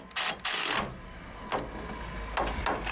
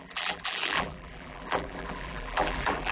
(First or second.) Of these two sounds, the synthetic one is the second